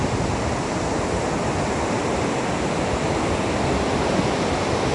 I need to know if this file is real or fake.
real